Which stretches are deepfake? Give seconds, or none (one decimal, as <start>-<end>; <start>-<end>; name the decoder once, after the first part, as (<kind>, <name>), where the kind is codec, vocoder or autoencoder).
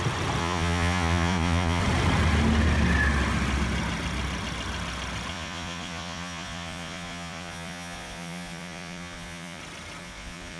0.4-1.8 (vocoder, Vocos); 5.3-9.6; 10.0-10.6